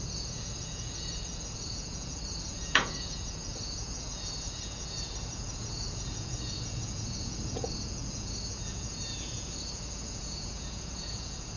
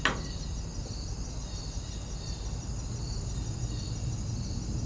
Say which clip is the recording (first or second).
second